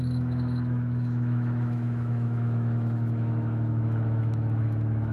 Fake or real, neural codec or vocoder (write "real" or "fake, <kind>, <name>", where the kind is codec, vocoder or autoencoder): fake, autoencoder, DAC-VAE